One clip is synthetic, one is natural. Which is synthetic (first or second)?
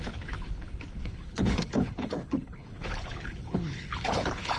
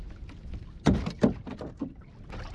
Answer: first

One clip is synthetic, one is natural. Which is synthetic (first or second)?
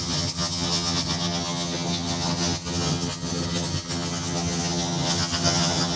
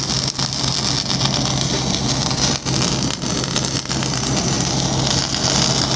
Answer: first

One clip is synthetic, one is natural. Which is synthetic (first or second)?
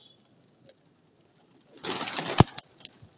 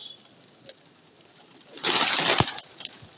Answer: second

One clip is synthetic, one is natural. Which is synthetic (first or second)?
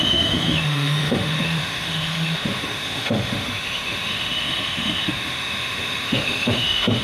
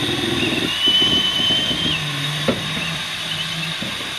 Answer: first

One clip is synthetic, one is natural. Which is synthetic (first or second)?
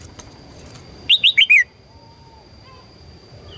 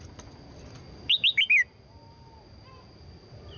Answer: first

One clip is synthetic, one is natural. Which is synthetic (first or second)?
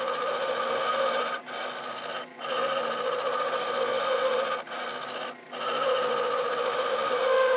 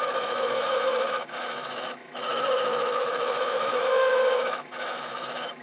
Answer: second